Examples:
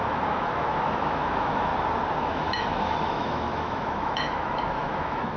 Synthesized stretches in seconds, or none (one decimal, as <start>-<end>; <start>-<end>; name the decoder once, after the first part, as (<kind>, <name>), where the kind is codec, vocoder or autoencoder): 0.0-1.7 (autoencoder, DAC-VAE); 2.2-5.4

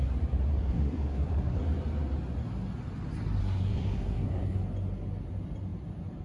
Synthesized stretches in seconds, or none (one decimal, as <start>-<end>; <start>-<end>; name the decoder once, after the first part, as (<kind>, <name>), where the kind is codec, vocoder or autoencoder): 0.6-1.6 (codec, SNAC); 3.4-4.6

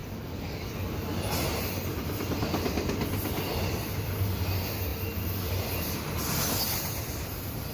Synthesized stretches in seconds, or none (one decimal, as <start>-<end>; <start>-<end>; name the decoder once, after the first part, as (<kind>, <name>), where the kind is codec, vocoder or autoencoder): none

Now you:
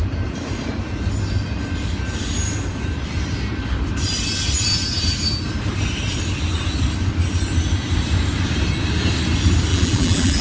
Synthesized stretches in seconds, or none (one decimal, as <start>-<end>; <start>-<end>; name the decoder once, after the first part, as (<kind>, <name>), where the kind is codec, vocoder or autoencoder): 9.7-10.4 (vocoder, BigVGAN v2)

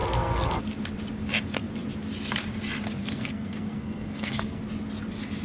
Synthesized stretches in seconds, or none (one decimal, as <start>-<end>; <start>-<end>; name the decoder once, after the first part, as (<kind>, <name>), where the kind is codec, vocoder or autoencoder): 0.0-0.6 (codec, SNAC); 3.0-4.6

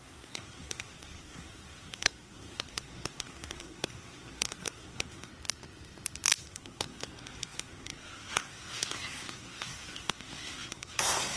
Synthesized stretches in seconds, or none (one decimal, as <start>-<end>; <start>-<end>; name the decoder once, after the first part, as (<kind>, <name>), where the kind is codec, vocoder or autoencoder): 0.0-5.3 (codec, SNAC); 6.4-11.4